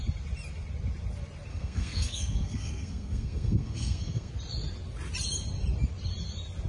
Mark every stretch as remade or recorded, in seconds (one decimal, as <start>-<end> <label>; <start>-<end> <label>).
0.0-1.5 recorded; 1.5-4.3 remade; 4.3-6.7 recorded